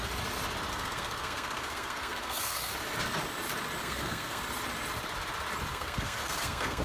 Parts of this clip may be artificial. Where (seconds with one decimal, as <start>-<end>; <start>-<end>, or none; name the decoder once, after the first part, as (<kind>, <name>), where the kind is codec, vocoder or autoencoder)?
0.7-2.7 (codec, SNAC); 3.8-4.4; 5.7-6.8